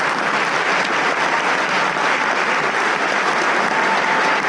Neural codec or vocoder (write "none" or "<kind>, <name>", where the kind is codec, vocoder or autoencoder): none